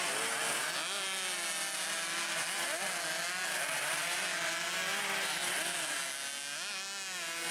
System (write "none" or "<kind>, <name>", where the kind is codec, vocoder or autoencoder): none